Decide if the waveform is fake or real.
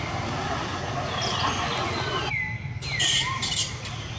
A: real